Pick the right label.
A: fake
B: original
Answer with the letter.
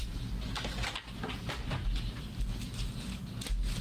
B